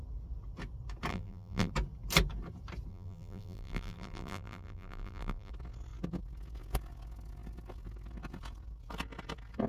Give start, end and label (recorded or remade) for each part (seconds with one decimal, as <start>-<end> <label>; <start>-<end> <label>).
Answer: 0.0-1.1 recorded; 1.1-1.7 remade; 1.7-2.9 recorded; 2.9-5.5 remade; 5.5-9.7 recorded